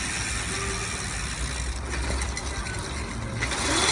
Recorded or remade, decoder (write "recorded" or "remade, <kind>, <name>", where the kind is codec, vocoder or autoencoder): recorded